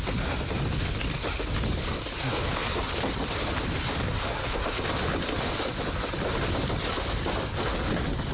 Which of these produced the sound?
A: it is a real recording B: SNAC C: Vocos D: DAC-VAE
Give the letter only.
A